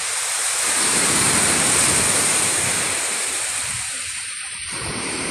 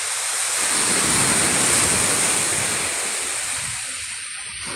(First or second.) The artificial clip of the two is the first